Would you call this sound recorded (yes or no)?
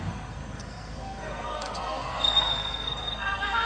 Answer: no